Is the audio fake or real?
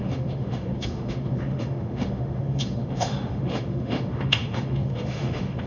fake